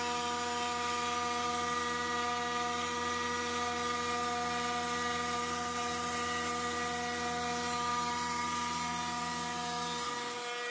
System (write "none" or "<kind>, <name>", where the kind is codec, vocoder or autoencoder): none